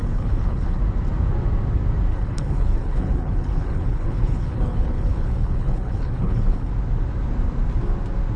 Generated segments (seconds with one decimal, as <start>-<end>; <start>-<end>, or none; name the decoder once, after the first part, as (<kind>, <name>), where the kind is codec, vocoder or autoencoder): 0.0-0.8 (codec, HILCodec); 2.1-6.7